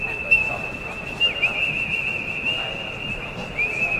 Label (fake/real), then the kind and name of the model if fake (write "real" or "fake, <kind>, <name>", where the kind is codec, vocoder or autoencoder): real